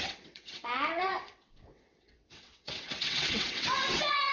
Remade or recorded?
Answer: remade